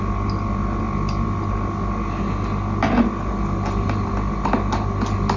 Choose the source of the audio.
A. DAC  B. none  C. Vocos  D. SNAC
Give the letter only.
B